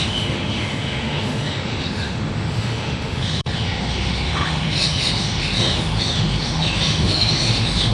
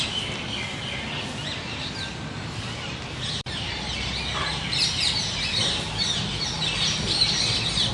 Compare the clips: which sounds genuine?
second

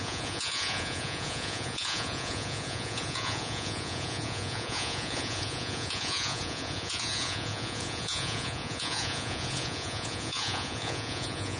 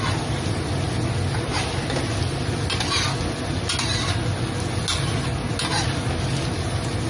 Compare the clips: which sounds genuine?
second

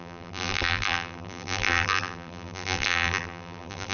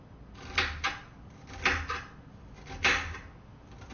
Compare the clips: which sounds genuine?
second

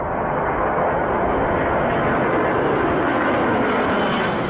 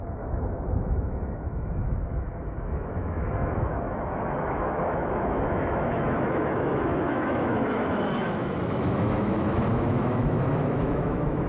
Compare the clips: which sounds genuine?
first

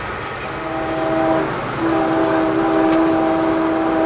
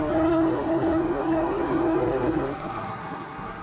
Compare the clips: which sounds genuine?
first